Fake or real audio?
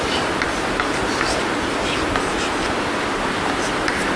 real